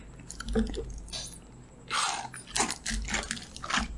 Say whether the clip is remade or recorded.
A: recorded